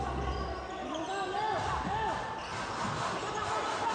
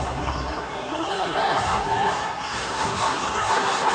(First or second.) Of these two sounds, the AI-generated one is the second